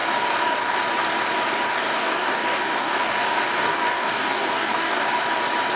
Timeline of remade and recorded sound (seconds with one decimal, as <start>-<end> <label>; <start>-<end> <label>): 0.0-0.8 remade; 0.8-1.7 recorded; 1.7-5.2 remade; 5.2-5.8 recorded